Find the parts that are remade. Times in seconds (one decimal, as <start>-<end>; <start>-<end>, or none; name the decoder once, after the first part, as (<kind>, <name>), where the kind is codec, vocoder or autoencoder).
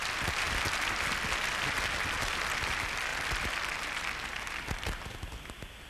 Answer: none